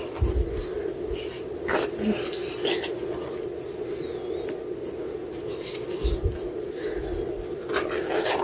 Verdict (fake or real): real